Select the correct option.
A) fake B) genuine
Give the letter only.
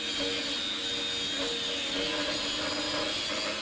B